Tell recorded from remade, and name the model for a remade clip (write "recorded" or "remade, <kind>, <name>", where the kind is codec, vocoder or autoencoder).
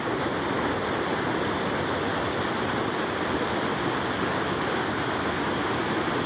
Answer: recorded